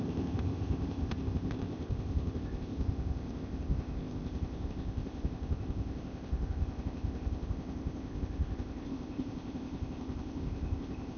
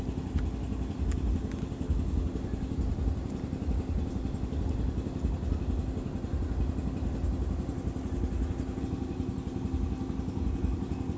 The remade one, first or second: first